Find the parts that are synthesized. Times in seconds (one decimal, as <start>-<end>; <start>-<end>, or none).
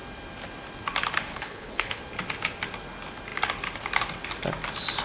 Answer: 1.3-2.0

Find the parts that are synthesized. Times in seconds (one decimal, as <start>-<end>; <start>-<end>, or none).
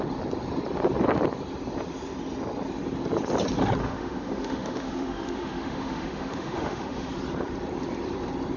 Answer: 3.8-7.1